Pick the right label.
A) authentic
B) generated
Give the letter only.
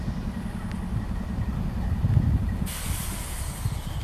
A